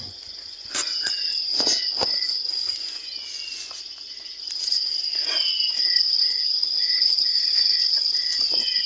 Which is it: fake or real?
fake